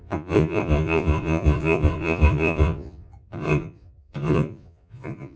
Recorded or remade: remade